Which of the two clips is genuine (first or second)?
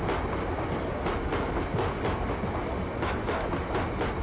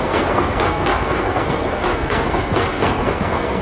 first